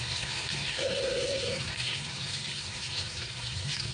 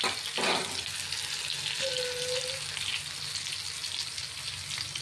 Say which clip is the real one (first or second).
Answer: second